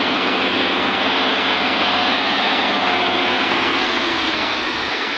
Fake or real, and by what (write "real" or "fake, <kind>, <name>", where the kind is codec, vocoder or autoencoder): fake, codec, SNAC